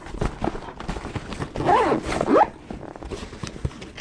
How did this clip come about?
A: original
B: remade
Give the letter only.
A